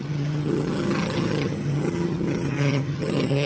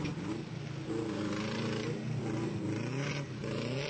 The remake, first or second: first